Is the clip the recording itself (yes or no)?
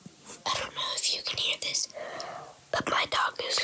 yes